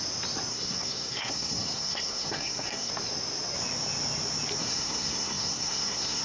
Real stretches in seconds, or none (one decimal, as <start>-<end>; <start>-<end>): 0.0-0.5; 2.9-4.6